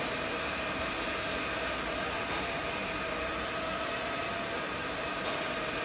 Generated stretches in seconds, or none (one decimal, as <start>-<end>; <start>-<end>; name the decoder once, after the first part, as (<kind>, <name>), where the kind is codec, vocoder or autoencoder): none